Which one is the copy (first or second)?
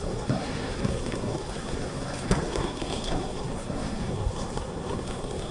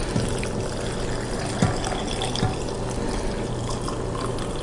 first